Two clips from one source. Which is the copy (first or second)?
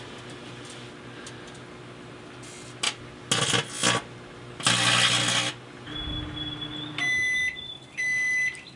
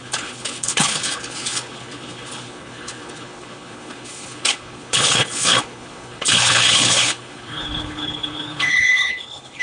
second